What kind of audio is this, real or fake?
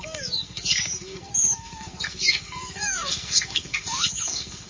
fake